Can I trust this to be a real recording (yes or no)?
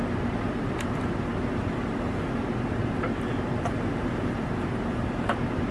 no